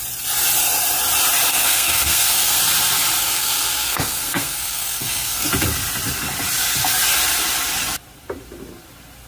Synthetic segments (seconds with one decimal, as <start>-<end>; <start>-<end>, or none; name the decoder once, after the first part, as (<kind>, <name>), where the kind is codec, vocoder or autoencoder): 1.5-2.6 (codec, SNAC); 3.2-5.5